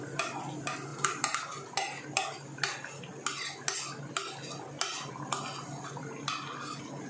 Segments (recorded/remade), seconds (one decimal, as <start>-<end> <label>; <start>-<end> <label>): 0.0-7.1 recorded